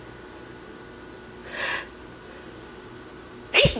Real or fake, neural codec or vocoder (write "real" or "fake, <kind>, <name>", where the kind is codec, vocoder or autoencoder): real